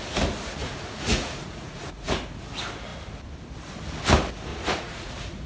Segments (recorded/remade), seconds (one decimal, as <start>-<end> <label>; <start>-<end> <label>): 0.0-0.6 recorded; 0.6-2.2 remade; 2.2-4.5 recorded; 4.5-5.1 remade; 5.1-5.5 recorded